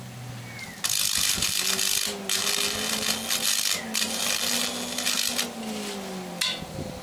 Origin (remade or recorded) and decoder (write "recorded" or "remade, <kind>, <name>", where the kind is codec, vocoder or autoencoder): recorded